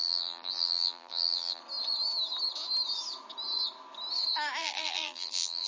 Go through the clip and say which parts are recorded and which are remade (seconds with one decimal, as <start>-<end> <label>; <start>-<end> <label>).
0.0-1.6 remade; 1.6-4.6 recorded; 4.6-5.7 remade